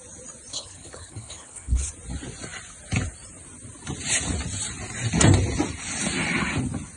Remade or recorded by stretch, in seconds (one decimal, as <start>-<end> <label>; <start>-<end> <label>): 0.0-0.5 recorded; 0.5-1.9 remade; 1.9-7.0 recorded